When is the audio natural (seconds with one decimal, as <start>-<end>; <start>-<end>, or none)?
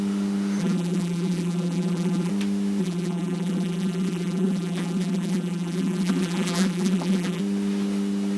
0.0-0.6; 2.3-2.8; 7.4-8.4